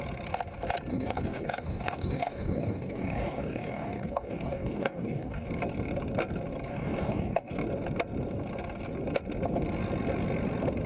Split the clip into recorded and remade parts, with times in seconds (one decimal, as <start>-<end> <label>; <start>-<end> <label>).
0.0-0.9 recorded; 0.9-5.5 remade; 5.5-6.7 recorded; 6.7-7.5 remade; 7.5-10.9 recorded